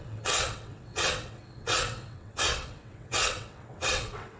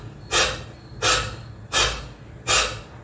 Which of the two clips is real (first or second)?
second